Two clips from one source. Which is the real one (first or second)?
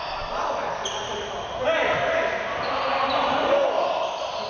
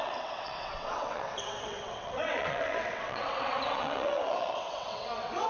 first